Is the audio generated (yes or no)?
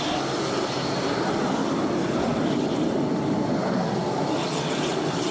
no